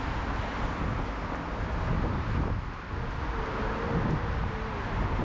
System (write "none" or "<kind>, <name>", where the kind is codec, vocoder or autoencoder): none